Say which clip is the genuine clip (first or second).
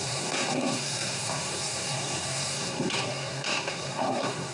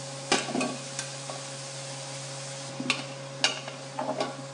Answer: second